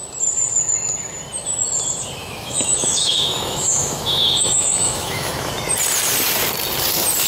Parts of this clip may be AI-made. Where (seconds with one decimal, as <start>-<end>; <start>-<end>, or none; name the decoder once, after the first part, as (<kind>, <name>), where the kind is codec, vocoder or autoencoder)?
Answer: 2.2-5.5 (autoencoder, DAC-VAE)